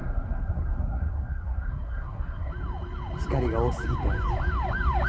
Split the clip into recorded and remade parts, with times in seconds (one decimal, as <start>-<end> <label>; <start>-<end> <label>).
0.0-2.5 remade; 2.5-5.1 recorded